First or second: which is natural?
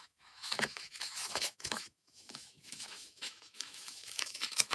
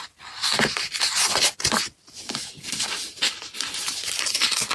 second